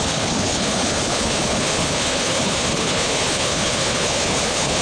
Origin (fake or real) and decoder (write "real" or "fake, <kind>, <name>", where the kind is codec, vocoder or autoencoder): fake, codec, HILCodec